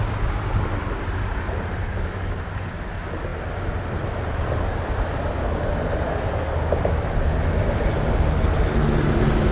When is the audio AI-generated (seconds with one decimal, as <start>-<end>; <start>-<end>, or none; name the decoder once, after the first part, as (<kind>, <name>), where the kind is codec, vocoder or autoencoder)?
none